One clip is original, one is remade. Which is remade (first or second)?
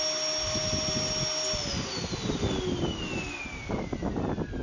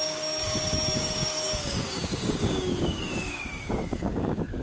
second